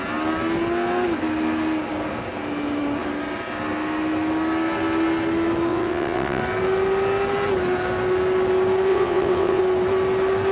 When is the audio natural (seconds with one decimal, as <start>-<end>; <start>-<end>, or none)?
0.0-5.7; 6.4-8.9; 9.6-10.5